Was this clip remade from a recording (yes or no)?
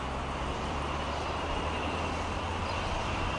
yes